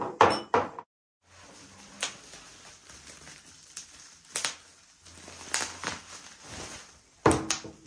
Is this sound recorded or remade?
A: recorded